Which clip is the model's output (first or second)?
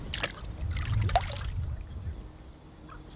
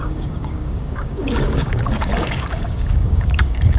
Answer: second